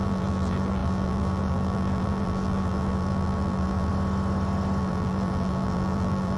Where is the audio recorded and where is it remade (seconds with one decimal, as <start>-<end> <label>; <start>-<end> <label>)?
0.0-3.9 remade; 3.9-4.8 recorded; 4.8-6.4 remade